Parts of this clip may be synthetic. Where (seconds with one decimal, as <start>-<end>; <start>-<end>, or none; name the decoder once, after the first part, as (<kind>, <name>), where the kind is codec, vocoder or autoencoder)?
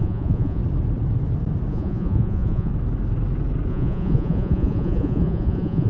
0.0-0.6 (vocoder, Vocos); 1.7-2.7; 3.7-5.9